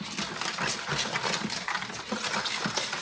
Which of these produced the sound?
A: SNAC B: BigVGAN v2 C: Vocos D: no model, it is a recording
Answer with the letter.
D